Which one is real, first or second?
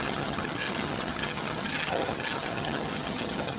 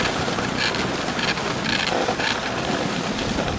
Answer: second